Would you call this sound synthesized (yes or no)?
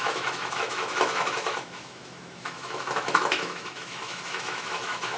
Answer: yes